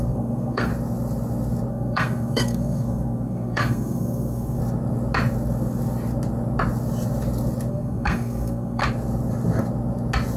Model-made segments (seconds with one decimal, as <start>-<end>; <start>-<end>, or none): 0.0-0.7; 1.7-4.6; 7.7-8.8